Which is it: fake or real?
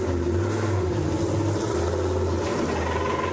real